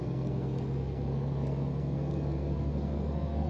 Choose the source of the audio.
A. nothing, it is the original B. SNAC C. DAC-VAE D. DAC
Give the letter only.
B